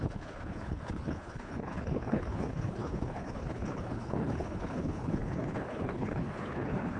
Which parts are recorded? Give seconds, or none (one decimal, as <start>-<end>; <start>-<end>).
none